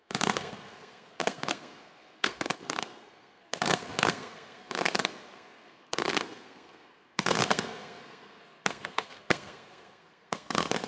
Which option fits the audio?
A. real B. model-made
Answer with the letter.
B